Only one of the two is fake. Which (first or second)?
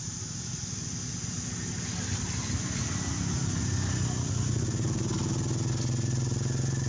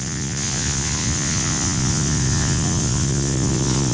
second